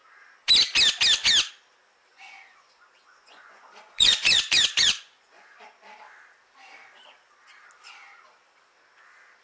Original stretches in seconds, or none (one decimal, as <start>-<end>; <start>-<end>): 0.0-2.1; 5.7-9.4